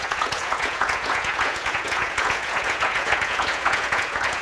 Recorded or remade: remade